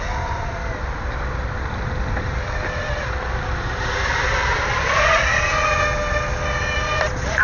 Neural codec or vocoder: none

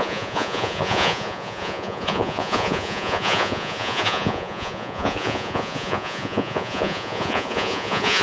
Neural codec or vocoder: vocoder, Vocos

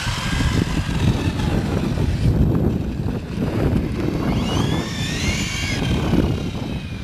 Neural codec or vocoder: none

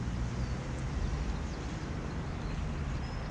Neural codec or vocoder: none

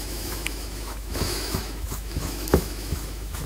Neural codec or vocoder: autoencoder, DAC-VAE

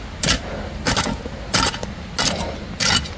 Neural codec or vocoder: none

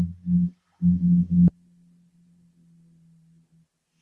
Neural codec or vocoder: none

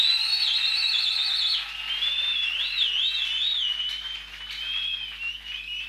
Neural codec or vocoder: none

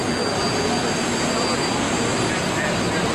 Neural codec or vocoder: none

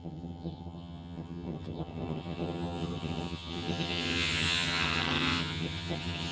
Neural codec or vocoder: vocoder, HiFi-GAN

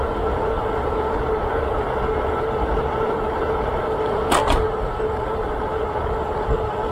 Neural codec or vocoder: none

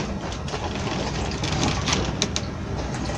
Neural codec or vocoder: none